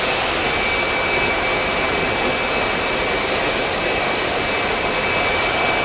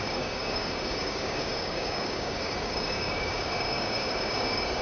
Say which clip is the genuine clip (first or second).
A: first